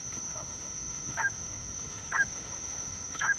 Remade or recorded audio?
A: remade